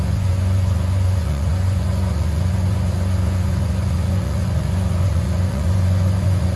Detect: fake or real fake